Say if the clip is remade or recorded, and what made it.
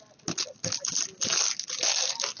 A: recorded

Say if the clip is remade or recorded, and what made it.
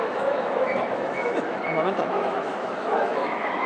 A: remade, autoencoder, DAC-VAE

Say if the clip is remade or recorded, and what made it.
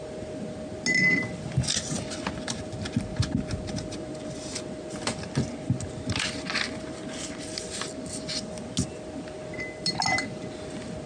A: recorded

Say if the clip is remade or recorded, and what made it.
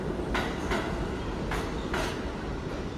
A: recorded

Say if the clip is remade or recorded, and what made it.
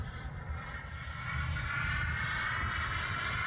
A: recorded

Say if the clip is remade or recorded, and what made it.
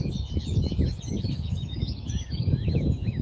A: remade, autoencoder, DAC-VAE